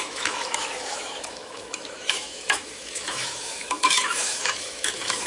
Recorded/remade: remade